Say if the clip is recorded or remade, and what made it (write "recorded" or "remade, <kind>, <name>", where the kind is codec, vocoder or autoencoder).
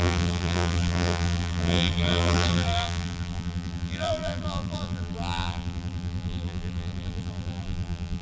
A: remade, vocoder, BigVGAN v2